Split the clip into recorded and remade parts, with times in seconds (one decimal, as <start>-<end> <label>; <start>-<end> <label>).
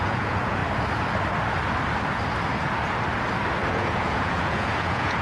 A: 0.0-0.6 remade; 0.6-3.7 recorded; 3.7-5.2 remade